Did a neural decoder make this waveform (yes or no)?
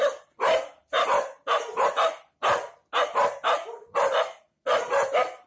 no